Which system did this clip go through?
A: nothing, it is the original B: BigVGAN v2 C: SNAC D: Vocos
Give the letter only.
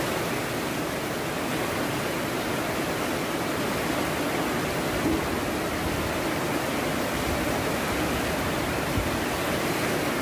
A